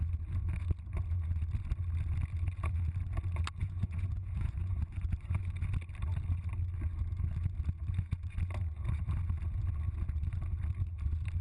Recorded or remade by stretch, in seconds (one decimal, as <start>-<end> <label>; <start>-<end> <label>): 0.0-3.6 recorded; 3.6-5.5 remade; 5.5-11.4 recorded